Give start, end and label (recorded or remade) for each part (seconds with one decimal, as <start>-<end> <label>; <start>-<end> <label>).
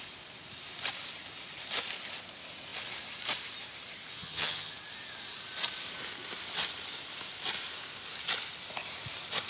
0.0-4.2 recorded; 4.2-4.7 remade; 4.7-9.5 recorded